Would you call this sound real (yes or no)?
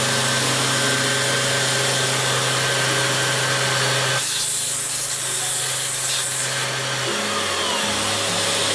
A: yes